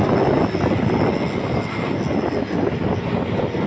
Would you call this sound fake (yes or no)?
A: no